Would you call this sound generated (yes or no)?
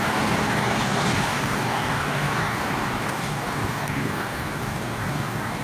yes